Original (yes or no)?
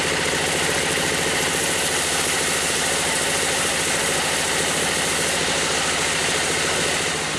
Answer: no